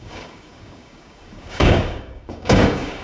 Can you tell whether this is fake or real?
fake